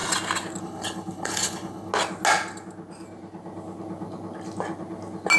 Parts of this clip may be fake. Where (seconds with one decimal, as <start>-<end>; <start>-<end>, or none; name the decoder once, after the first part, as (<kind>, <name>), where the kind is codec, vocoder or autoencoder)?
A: 0.6-1.9 (codec, HILCodec)